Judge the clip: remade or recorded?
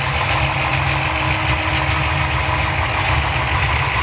recorded